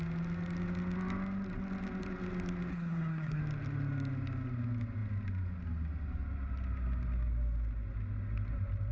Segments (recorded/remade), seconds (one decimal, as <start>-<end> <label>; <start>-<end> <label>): 0.0-2.7 recorded; 2.7-3.4 remade; 3.4-8.9 recorded